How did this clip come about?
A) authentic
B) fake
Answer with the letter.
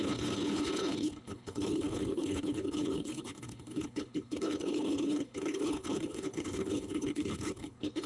B